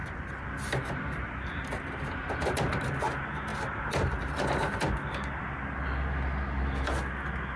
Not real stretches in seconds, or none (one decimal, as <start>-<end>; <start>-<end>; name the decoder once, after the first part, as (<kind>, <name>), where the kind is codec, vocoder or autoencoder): 0.0-1.7 (vocoder, BigVGAN v2); 3.5-4.3